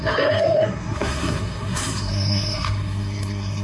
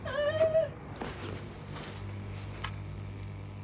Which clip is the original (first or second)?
second